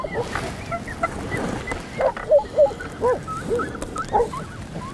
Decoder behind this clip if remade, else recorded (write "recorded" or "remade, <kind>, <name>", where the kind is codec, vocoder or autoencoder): recorded